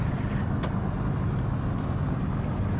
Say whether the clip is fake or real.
real